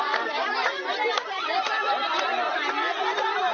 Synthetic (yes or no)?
no